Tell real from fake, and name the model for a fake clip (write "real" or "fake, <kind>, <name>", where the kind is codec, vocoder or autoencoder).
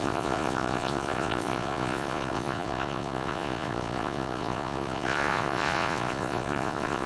fake, vocoder, Vocos